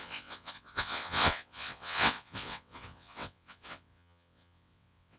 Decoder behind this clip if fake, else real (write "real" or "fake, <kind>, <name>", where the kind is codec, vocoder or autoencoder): fake, vocoder, WaveNeXt